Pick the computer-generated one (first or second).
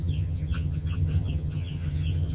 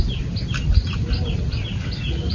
first